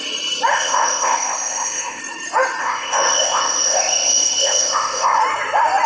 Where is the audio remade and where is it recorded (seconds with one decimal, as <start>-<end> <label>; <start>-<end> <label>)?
0.0-0.5 recorded; 0.5-2.0 remade; 2.0-2.6 recorded; 2.6-5.2 remade; 5.2-5.9 recorded